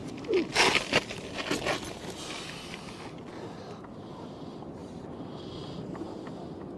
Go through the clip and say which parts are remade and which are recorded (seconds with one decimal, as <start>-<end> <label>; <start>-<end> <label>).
0.0-6.8 recorded